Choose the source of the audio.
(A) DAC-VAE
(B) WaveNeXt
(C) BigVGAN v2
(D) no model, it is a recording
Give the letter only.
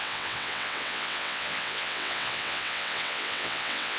B